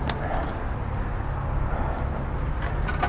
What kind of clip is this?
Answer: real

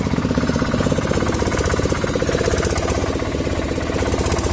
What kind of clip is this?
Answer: real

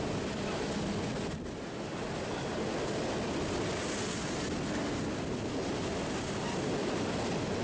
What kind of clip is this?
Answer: real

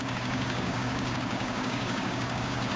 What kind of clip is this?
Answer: fake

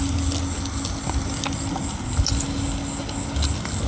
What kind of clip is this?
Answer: real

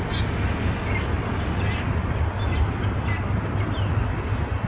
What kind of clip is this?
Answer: real